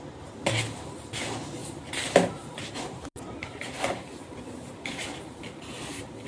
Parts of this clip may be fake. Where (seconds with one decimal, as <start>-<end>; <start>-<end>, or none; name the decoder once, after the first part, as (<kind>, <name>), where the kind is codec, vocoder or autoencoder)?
1.6-5.4 (vocoder, BigVGAN v2)